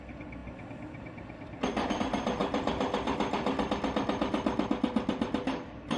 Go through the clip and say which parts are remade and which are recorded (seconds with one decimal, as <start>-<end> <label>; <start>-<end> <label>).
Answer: 0.0-0.4 remade; 0.4-2.0 recorded; 2.0-6.0 remade